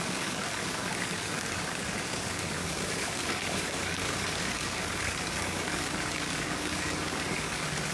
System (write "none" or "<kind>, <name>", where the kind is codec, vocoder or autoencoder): codec, DAC